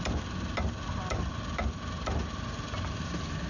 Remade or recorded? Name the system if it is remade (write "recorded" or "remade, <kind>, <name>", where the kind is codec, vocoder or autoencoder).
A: recorded